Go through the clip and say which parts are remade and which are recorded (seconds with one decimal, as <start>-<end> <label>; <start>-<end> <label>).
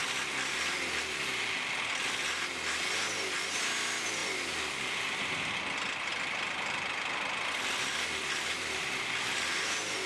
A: 0.0-6.1 recorded; 6.1-10.1 remade